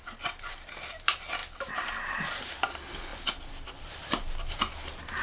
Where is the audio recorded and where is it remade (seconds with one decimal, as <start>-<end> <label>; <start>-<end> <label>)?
0.0-5.2 recorded